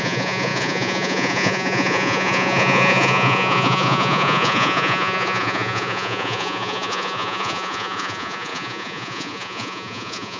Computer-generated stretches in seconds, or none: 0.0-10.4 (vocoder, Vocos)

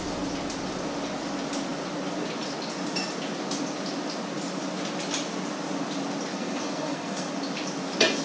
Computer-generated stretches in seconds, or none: 6.3-7.3 (codec, SNAC)

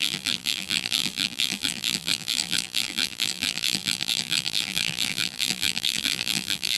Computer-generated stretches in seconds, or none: 0.0-6.8 (vocoder, BigVGAN v2)